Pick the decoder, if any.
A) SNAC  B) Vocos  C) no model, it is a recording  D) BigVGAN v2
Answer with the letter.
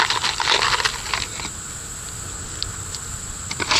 C